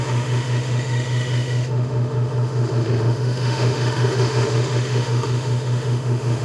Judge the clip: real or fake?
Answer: fake